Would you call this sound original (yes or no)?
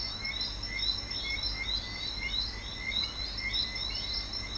yes